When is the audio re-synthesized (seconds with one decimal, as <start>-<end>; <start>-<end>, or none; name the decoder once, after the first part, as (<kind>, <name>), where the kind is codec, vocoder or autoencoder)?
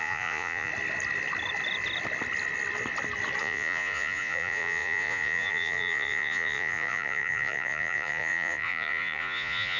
0.0-0.7 (vocoder, Vocos); 3.4-9.8